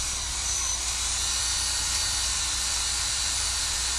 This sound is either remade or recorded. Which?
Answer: remade